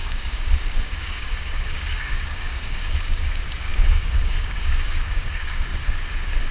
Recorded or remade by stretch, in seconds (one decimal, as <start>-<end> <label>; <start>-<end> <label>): 0.0-5.7 remade; 5.7-6.5 recorded